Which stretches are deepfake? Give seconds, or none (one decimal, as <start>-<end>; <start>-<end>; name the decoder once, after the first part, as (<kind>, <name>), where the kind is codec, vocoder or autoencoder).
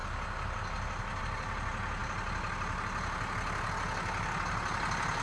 none